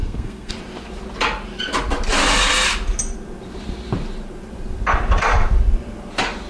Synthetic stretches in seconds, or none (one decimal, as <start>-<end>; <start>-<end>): 0.0-0.5